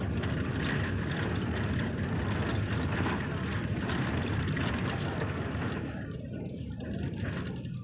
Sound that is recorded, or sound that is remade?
recorded